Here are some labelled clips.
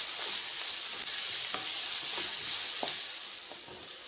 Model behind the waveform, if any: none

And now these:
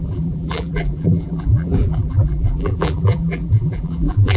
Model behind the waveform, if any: vocoder, BigVGAN v2